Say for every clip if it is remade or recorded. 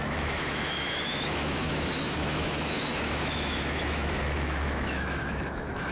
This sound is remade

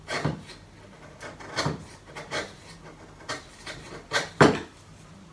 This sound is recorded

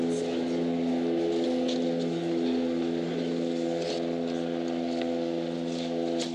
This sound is recorded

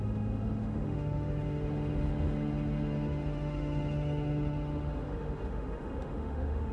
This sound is remade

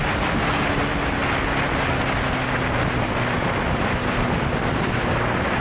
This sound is recorded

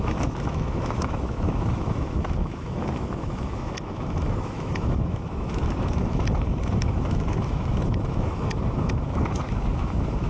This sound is remade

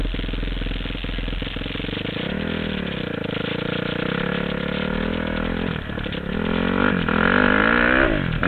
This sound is recorded